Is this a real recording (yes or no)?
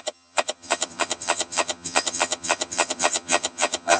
no